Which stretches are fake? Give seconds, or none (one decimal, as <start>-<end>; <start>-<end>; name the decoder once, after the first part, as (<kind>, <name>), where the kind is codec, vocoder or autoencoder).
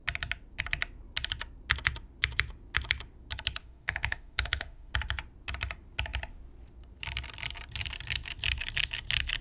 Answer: 3.6-4.9 (autoencoder, DAC-VAE)